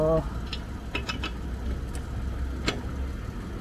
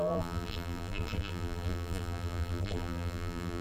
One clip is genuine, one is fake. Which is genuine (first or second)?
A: first